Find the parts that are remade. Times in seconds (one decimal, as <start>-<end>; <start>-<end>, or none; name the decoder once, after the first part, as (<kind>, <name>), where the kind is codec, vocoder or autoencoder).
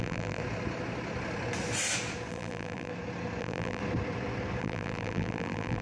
0.0-0.4 (vocoder, BigVGAN v2); 2.3-2.9; 3.4-3.8; 4.6-5.8